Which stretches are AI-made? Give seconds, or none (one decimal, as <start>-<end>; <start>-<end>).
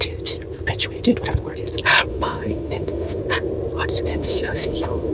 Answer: 2.1-3.2; 4.1-5.1